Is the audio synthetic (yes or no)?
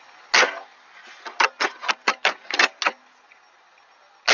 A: no